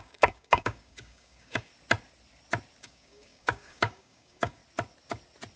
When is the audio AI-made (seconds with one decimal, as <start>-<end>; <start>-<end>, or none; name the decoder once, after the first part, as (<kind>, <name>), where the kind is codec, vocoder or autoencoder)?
0.0-1.7 (codec, DAC); 2.8-4.6